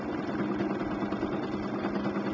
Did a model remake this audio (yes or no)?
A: no